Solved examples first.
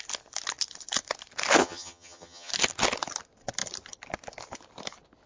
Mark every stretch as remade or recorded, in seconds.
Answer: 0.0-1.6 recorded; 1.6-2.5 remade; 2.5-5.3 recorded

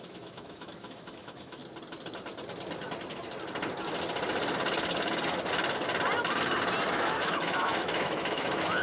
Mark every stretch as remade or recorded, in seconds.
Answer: 0.0-1.6 remade; 1.6-6.9 recorded; 6.9-8.8 remade

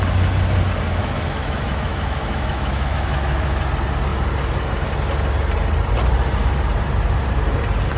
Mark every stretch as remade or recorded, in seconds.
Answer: 0.0-1.0 recorded; 1.0-3.6 remade; 3.6-8.0 recorded

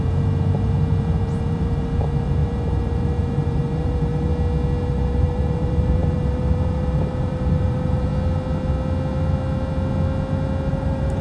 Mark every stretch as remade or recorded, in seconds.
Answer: 0.0-4.3 remade; 4.3-4.9 recorded; 4.9-8.1 remade; 8.1-10.7 recorded; 10.7-11.2 remade